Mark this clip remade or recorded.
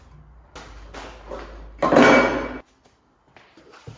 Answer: recorded